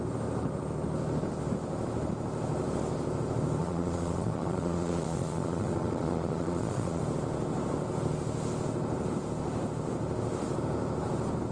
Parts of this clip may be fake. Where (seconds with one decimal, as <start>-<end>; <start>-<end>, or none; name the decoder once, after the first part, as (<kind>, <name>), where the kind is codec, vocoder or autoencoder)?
3.6-7.0 (vocoder, Vocos)